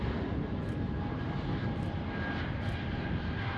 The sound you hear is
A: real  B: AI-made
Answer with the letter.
A